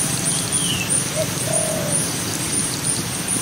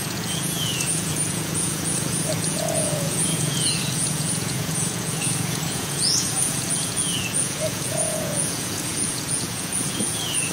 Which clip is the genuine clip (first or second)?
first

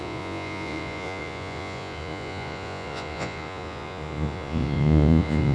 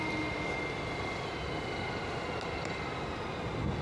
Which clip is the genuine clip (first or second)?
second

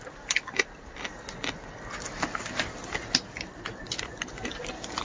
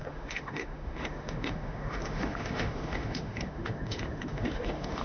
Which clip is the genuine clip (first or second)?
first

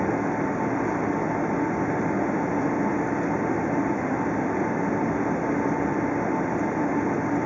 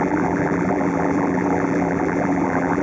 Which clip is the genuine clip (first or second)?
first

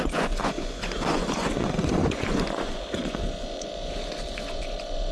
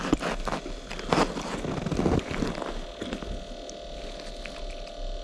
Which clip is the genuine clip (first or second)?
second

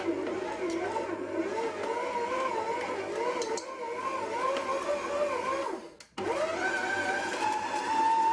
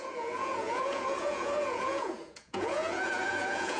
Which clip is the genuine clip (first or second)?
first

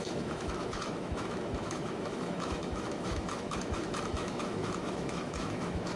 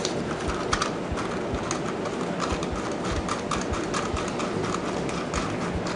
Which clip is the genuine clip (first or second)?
second